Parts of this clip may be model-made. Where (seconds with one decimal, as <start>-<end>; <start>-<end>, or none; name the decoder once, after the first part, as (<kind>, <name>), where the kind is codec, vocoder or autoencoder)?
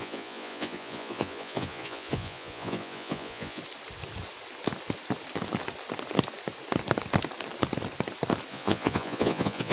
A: 0.0-3.6 (vocoder, Vocos); 8.5-9.7